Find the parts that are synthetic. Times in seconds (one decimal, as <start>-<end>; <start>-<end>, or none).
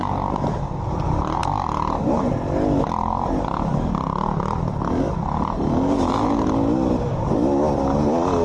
none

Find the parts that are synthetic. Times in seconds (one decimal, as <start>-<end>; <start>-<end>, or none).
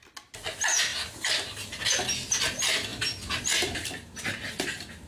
none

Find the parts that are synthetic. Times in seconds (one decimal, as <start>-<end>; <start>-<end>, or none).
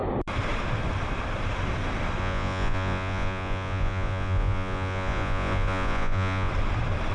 2.2-6.5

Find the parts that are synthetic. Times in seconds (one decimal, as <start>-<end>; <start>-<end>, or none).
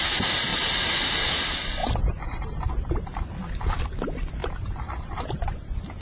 0.5-1.1; 1.8-3.2; 4.4-5.4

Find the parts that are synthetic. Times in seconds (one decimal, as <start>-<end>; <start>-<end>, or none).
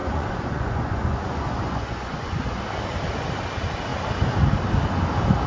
0.0-2.6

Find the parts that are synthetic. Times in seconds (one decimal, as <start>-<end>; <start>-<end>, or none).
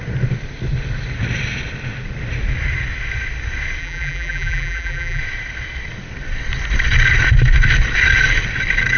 3.8-5.2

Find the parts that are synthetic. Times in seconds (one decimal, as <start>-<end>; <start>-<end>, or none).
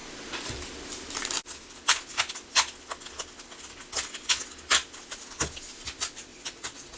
6.3-7.0